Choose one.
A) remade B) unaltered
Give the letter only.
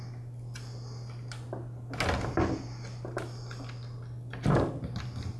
B